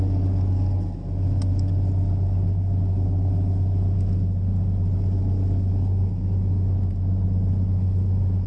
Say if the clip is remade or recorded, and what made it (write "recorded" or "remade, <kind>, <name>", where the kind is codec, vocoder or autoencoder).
recorded